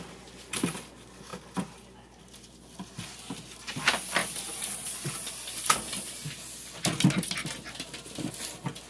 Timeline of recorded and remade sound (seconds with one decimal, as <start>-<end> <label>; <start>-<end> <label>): 0.0-8.9 recorded